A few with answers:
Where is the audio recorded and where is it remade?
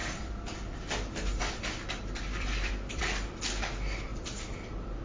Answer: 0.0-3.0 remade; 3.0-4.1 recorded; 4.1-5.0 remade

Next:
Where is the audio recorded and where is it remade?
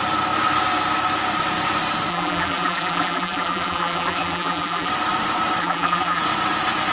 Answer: 0.0-2.1 recorded; 2.1-4.9 remade; 4.9-5.6 recorded; 5.6-6.2 remade; 6.2-6.9 recorded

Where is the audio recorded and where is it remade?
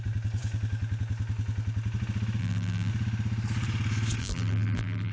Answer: 0.0-2.4 recorded; 2.4-2.9 remade; 2.9-4.2 recorded; 4.2-5.1 remade